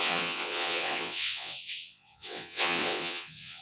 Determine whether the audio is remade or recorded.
remade